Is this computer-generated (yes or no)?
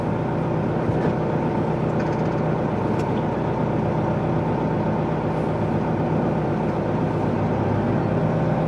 no